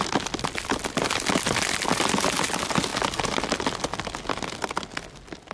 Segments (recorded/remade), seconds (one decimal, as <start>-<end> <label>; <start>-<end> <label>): 0.0-5.5 recorded